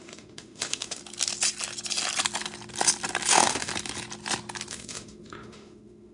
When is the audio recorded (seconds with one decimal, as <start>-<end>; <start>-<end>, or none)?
1.0-3.3; 3.7-4.7